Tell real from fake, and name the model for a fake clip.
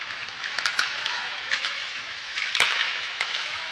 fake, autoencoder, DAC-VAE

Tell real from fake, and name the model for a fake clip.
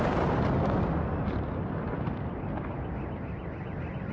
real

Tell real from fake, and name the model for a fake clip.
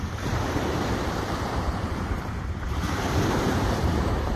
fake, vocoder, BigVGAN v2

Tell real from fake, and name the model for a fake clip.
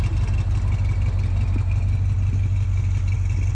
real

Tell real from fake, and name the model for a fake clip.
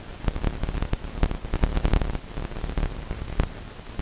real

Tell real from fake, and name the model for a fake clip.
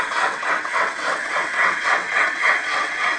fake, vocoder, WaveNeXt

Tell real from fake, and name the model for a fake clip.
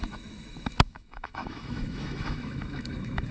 fake, autoencoder, DAC-VAE